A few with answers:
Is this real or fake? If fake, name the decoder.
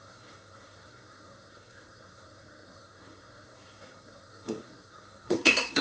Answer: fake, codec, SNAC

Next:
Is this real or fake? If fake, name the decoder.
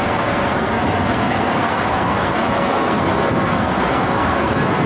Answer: fake, codec, SNAC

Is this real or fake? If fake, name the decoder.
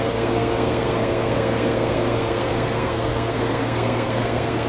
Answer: fake, codec, SNAC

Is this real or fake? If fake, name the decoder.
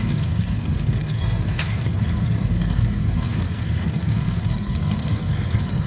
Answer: fake, codec, SNAC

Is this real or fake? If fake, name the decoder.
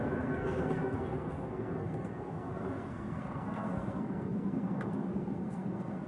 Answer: fake, codec, SNAC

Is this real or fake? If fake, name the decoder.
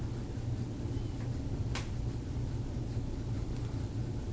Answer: real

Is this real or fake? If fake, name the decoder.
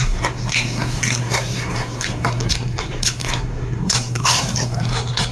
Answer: fake, codec, SNAC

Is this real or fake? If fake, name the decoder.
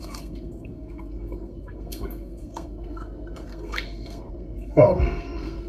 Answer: fake, codec, SNAC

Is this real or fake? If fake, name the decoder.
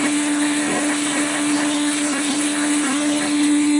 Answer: fake, codec, SNAC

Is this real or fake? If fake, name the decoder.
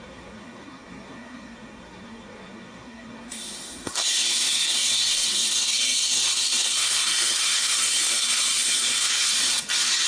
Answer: fake, codec, SNAC